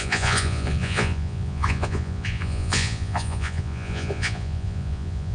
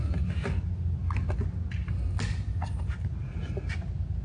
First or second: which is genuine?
second